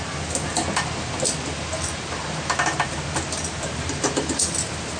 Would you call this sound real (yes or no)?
yes